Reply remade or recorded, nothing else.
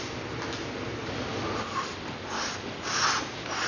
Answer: recorded